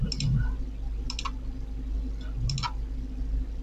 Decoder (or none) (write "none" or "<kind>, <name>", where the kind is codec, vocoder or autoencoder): none